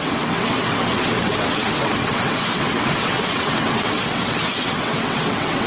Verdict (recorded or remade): remade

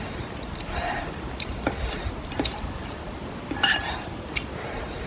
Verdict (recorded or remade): remade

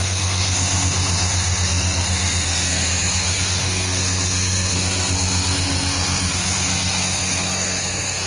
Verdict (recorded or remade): remade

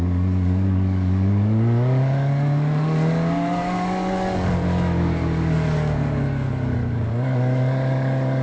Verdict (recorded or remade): remade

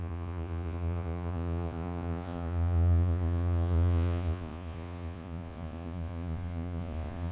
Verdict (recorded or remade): remade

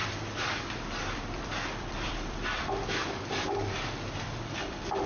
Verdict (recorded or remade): remade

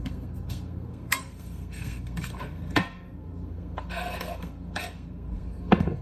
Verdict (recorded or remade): remade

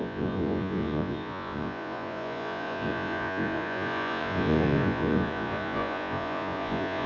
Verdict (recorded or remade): remade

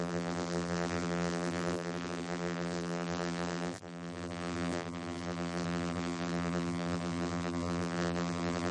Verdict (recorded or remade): remade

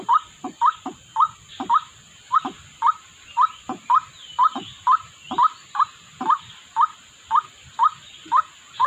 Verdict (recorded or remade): recorded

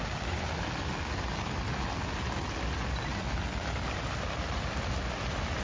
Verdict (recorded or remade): recorded